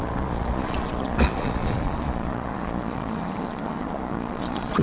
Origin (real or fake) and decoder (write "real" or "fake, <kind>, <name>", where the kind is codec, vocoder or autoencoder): fake, vocoder, Vocos